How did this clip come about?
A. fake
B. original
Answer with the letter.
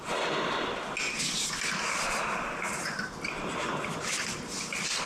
B